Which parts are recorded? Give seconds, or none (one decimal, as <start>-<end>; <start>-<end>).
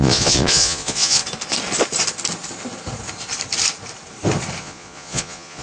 1.2-4.6